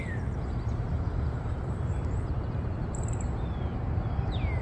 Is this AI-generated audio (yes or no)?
yes